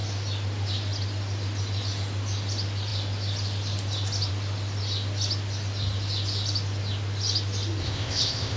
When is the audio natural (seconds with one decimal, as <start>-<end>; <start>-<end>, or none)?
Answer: 0.0-7.8